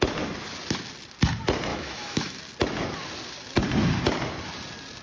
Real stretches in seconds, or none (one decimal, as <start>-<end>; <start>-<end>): 0.0-1.7; 2.4-5.0